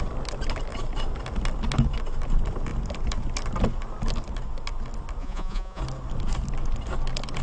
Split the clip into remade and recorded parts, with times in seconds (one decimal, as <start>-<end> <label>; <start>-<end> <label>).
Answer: 0.0-5.2 recorded; 5.2-5.8 remade; 5.8-7.4 recorded